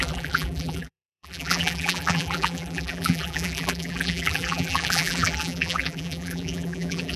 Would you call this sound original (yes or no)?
no